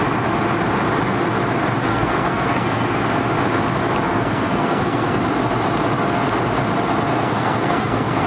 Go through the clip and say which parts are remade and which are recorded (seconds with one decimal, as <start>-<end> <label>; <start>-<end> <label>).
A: 0.0-1.9 recorded; 1.9-2.9 remade; 2.9-4.1 recorded; 4.1-5.2 remade; 5.2-7.1 recorded; 7.1-8.3 remade